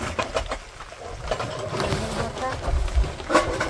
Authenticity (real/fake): real